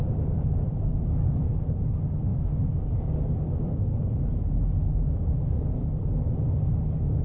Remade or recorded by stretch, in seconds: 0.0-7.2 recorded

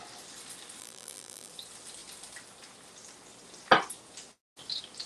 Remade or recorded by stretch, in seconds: 0.0-0.8 recorded; 0.8-1.5 remade; 1.5-5.1 recorded

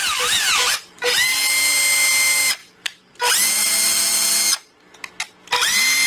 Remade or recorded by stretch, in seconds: 0.0-1.4 remade; 1.4-2.6 recorded; 2.6-4.3 remade; 4.3-6.1 recorded

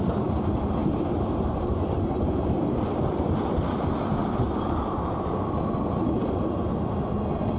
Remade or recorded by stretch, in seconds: 0.0-0.8 recorded; 0.8-2.0 remade; 2.0-4.2 recorded; 4.2-5.3 remade; 5.3-6.2 recorded; 6.2-6.8 remade; 6.8-7.6 recorded

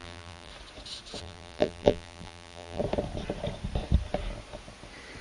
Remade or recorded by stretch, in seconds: 0.0-0.5 remade; 0.5-1.2 recorded; 1.2-2.8 remade; 2.8-5.2 recorded